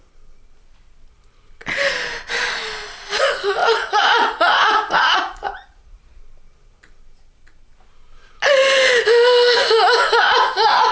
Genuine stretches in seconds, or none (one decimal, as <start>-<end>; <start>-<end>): 0.0-3.6; 6.2-10.9